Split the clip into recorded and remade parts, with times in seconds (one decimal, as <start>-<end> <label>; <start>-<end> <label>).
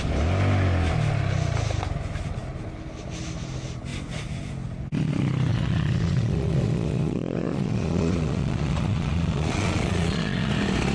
0.0-5.5 recorded; 5.5-10.5 remade; 10.5-10.9 recorded